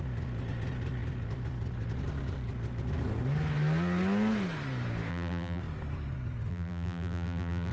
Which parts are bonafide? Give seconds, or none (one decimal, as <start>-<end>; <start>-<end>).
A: 0.0-5.1; 5.6-6.5